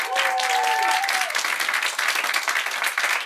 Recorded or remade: recorded